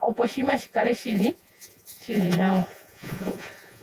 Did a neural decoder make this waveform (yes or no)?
yes